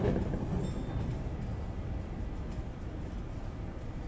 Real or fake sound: real